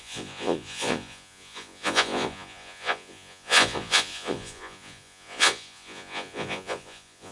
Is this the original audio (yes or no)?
no